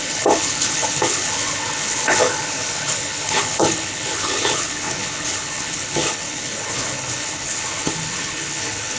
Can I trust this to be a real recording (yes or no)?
no